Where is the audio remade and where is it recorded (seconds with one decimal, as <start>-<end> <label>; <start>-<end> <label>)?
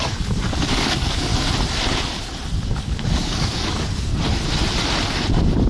0.0-1.3 remade; 1.3-2.8 recorded; 2.8-4.1 remade; 4.1-5.7 recorded